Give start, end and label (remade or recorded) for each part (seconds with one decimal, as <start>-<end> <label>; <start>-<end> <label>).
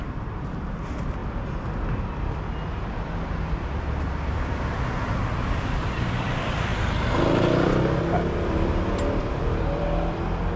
0.0-1.2 remade; 1.2-5.5 recorded; 5.5-6.7 remade; 6.7-9.2 recorded; 9.2-10.6 remade